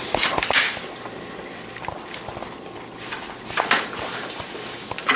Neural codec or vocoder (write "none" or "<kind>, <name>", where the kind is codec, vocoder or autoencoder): none